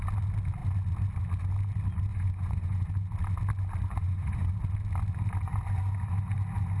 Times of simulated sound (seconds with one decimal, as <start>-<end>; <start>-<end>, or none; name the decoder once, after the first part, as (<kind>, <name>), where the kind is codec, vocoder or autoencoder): 2.1-2.9 (vocoder, Vocos); 3.8-4.5